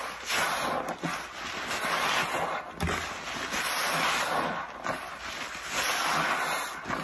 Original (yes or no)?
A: yes